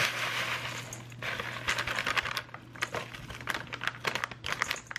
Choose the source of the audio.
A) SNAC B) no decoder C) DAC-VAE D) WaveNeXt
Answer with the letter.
B